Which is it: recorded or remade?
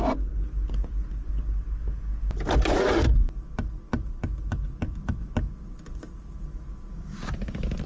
recorded